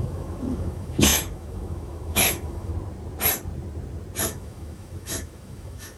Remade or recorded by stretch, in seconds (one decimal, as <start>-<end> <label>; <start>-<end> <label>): 0.0-2.7 remade; 2.7-4.2 recorded; 4.2-6.0 remade